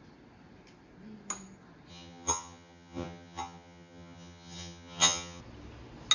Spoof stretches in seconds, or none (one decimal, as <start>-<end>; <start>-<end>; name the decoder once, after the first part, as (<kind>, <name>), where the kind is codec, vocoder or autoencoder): 1.9-5.4 (vocoder, HiFi-GAN)